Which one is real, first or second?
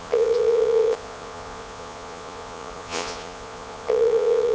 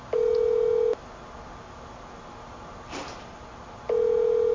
second